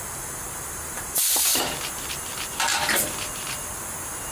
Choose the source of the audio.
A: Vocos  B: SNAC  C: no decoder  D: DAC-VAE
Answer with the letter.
C